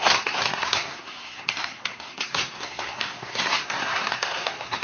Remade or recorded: remade